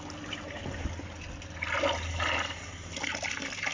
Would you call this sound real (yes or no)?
no